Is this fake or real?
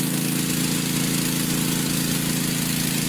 real